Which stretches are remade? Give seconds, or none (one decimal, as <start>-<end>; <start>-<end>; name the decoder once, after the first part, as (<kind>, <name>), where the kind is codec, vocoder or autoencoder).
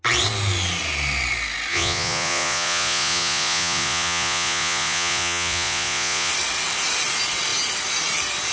1.7-6.3 (vocoder, Vocos)